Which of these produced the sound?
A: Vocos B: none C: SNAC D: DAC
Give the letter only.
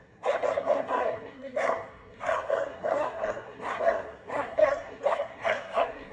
C